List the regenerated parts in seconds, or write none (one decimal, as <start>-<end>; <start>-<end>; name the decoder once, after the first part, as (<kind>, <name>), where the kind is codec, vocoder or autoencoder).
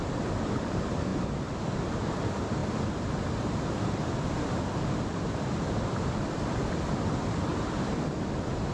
0.0-1.1 (vocoder, BigVGAN v2); 1.9-7.5